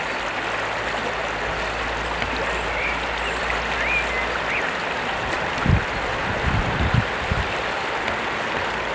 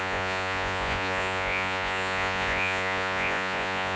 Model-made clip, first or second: second